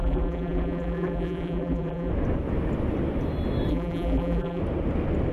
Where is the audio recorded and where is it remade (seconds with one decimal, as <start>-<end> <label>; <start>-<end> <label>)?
0.0-2.1 remade; 2.1-3.7 recorded; 3.7-4.6 remade; 4.6-5.3 recorded